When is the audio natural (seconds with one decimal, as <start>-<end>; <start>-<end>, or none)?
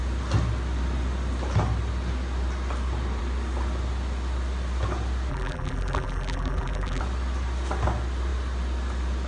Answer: 0.0-5.3; 7.0-9.3